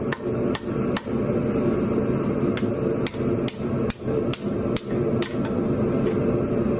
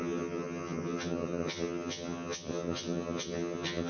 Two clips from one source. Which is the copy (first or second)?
second